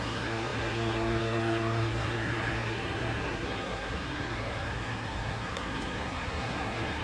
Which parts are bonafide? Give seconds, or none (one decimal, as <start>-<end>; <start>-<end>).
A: none

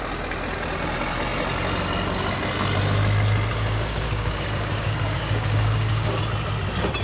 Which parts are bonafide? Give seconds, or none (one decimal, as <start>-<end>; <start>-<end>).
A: 0.0-3.5; 6.2-7.0

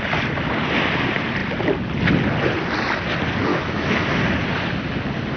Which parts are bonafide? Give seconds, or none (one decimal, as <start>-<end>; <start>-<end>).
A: 0.0-3.5; 4.2-5.4

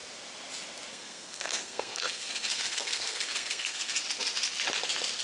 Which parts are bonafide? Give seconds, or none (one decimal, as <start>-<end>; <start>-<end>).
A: 0.0-0.9; 4.0-5.2

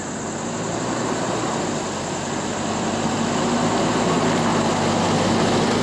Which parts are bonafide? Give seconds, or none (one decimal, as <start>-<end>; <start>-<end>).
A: 0.0-5.8